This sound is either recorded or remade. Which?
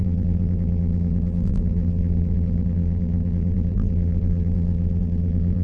remade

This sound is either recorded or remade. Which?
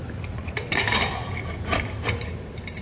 remade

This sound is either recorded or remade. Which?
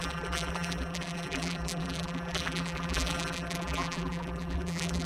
remade